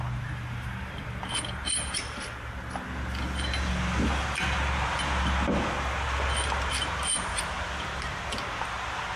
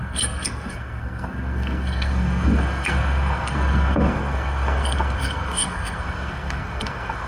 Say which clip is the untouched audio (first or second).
first